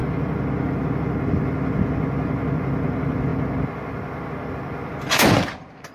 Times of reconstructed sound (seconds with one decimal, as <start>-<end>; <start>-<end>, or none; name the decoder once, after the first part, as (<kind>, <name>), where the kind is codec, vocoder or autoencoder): none